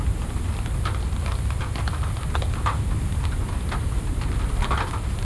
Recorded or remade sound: recorded